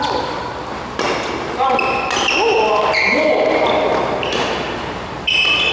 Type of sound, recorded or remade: recorded